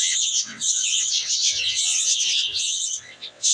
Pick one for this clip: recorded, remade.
remade